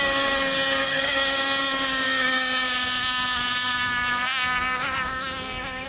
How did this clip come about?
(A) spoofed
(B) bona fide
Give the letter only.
A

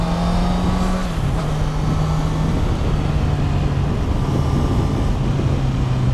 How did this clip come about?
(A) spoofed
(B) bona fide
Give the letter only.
B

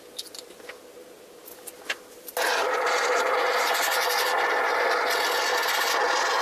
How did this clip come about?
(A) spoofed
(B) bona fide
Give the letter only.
B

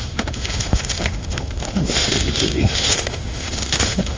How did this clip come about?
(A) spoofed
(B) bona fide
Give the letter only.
A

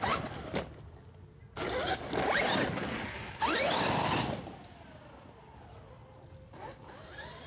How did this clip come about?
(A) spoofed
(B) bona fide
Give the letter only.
B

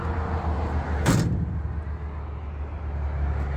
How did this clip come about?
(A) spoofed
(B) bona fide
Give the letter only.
B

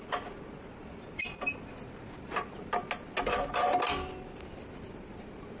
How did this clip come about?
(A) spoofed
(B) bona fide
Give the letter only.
B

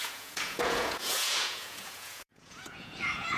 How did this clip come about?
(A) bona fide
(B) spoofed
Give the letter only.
B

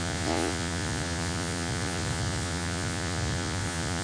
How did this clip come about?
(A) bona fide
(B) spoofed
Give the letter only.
B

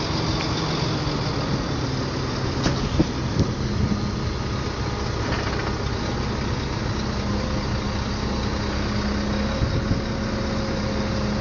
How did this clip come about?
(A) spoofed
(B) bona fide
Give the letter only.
B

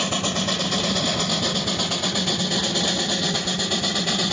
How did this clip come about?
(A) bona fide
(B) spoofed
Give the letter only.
A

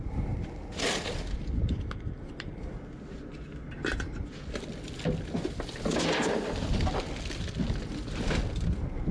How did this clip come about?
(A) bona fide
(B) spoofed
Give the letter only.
A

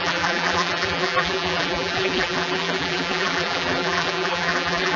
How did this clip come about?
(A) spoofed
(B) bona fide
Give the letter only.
A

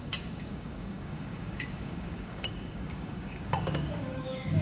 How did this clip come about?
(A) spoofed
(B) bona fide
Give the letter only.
A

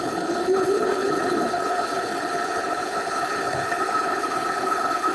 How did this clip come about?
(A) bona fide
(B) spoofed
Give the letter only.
B